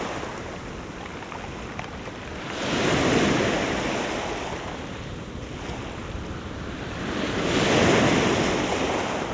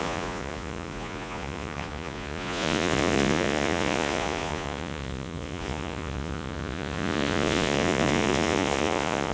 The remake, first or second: second